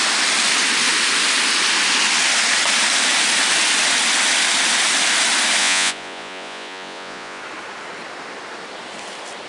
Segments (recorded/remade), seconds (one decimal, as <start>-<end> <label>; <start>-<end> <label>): 0.0-5.6 recorded; 5.6-7.4 remade; 7.4-9.5 recorded